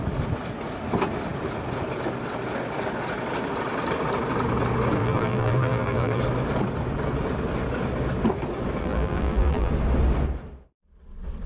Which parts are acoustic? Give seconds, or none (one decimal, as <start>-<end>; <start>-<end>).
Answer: 0.0-5.0; 6.2-8.8; 9.7-11.5